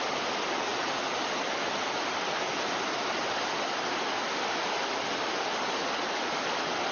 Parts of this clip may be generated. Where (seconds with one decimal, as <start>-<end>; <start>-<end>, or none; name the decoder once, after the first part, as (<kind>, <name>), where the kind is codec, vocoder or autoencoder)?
none